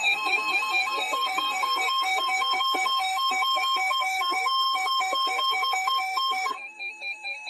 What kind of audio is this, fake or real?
fake